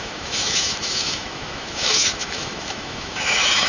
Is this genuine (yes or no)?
no